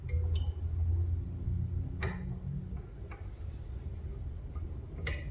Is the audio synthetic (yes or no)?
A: no